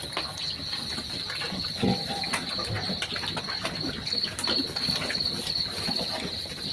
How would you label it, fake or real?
real